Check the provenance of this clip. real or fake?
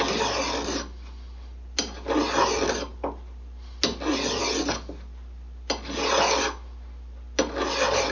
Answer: real